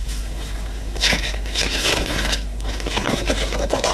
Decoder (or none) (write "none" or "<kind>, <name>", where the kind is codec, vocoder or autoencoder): codec, SNAC